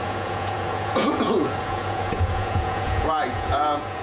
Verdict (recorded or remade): remade